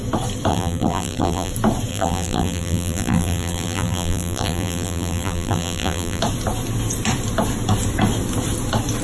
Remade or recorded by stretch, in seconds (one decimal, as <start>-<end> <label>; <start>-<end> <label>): 0.0-0.5 recorded; 0.5-1.5 remade; 1.5-1.9 recorded; 1.9-6.2 remade; 6.2-9.0 recorded